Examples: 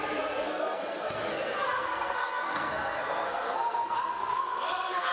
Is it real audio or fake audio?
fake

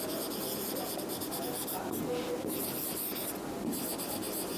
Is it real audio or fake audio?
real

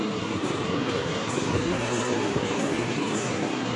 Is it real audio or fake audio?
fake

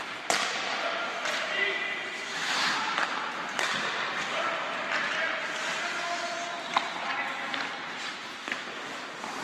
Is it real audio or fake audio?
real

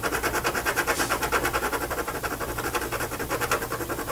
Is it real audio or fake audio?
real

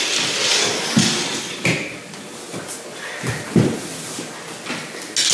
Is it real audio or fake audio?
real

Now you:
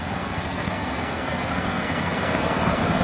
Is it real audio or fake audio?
fake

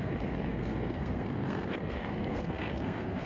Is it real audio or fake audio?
fake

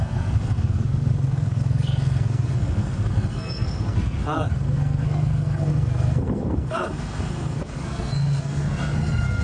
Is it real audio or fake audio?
fake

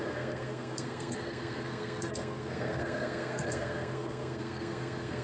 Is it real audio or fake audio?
fake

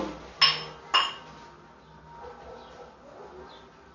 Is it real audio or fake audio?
real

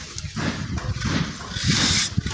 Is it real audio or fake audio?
real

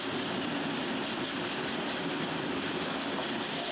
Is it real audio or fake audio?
real